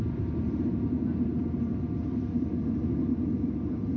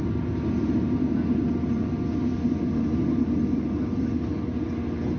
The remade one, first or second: first